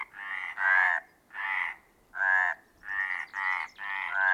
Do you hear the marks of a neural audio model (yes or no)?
no